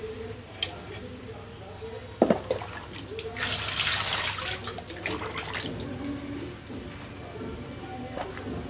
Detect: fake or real real